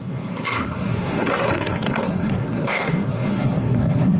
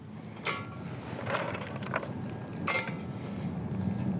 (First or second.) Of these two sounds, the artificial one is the first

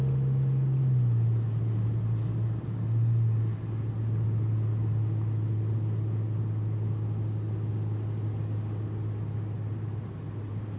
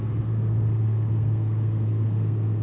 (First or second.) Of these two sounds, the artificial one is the second